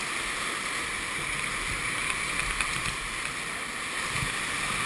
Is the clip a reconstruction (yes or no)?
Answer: no